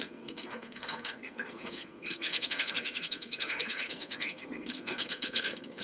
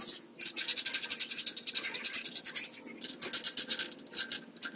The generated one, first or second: first